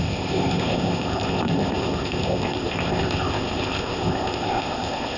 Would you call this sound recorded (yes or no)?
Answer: no